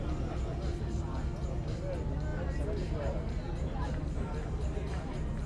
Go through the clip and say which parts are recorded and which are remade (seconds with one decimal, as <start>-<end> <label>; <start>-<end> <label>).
0.0-5.5 recorded